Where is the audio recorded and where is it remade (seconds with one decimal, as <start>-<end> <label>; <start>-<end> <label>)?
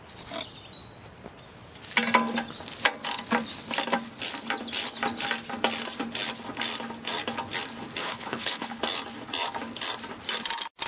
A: 0.0-8.0 recorded; 8.0-8.8 remade; 8.8-10.9 recorded